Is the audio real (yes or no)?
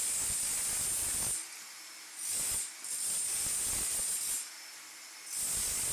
yes